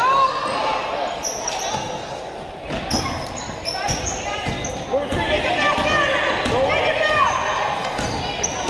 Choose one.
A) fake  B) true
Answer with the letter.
B